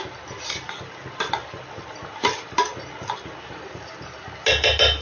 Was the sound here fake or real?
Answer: real